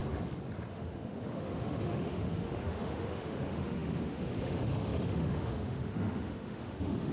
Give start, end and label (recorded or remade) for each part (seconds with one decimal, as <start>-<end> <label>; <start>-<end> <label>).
0.0-0.7 recorded; 0.7-7.1 remade